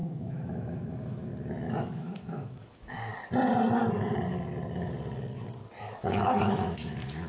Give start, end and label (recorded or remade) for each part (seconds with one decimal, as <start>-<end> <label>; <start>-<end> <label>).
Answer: 0.0-1.3 remade; 1.3-1.8 recorded; 1.8-3.1 remade; 3.1-5.8 recorded; 5.8-7.3 remade